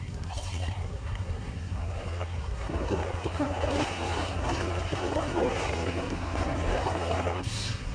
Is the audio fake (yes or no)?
yes